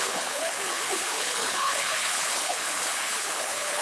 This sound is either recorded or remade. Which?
remade